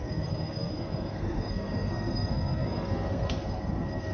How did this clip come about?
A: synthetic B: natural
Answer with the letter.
A